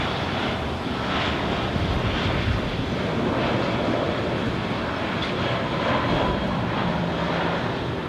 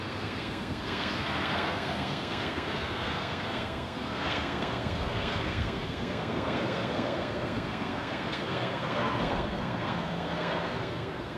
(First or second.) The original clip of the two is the first